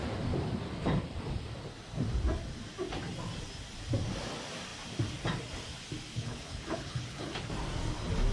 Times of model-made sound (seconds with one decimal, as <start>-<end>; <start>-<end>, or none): 6.1-7.5